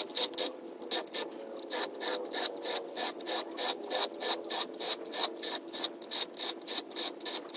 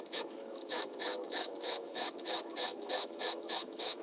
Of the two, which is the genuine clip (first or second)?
first